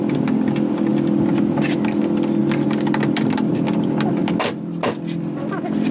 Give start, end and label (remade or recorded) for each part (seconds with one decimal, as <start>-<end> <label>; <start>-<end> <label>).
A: 0.0-5.9 recorded